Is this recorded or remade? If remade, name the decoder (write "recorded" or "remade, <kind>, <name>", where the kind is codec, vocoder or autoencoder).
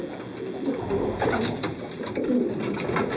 recorded